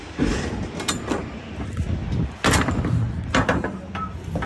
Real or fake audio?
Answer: real